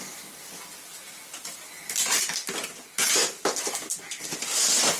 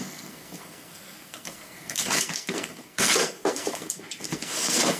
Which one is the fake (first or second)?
second